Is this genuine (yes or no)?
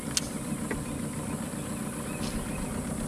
yes